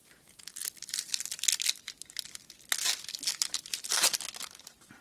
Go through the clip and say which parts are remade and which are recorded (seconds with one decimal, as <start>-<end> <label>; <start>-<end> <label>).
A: 0.0-5.0 recorded